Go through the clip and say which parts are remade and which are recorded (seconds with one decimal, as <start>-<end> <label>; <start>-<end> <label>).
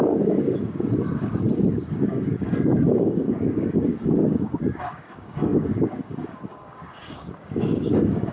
0.0-8.3 remade